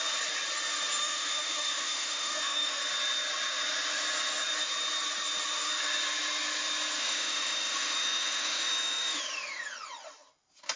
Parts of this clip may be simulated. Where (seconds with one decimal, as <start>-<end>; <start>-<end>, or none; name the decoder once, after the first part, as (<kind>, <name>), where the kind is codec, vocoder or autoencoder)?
1.0-2.8 (autoencoder, DAC-VAE); 7.0-9.2